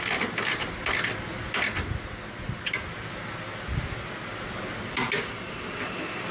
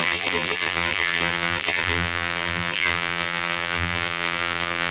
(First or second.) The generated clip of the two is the second